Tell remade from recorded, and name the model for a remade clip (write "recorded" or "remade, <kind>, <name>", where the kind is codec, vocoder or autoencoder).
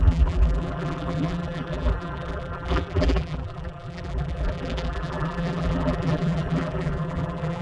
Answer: remade, vocoder, BigVGAN v2